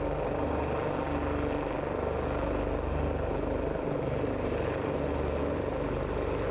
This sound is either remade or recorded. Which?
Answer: recorded